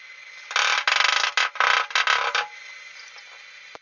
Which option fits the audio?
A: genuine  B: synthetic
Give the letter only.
A